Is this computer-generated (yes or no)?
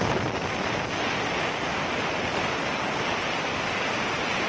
no